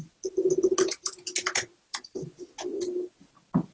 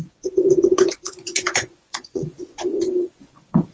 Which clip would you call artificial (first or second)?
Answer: second